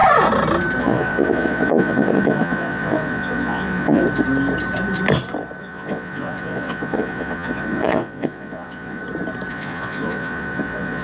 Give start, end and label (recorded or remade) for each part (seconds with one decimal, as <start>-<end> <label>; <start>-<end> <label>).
0.0-0.8 recorded; 0.8-4.0 remade; 4.0-5.6 recorded; 5.6-9.0 remade; 9.0-9.5 recorded; 9.5-11.0 remade